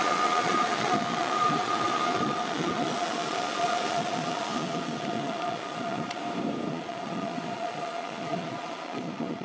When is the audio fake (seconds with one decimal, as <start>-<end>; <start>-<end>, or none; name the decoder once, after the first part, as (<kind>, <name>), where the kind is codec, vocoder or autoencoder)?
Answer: 0.0-6.2 (vocoder, Vocos); 6.7-9.4